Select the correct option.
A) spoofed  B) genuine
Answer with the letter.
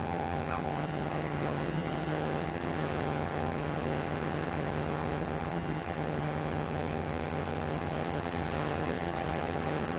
A